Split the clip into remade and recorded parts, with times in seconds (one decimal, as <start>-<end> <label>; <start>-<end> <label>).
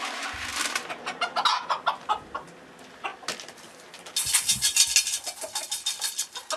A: 0.0-6.6 recorded